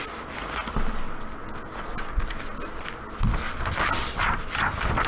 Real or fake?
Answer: real